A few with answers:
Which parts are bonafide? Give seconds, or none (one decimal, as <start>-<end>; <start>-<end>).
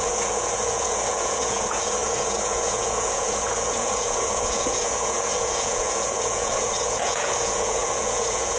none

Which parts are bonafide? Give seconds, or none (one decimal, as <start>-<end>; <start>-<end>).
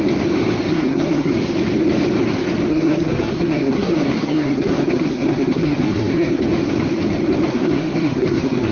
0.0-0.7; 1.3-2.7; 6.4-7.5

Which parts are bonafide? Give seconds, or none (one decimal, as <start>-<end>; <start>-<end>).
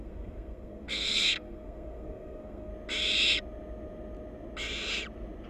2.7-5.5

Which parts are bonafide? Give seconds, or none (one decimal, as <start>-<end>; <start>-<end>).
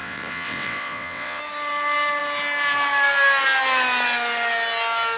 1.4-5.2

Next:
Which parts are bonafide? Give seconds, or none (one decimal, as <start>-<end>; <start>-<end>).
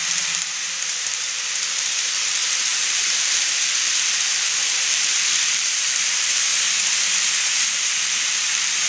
6.5-7.6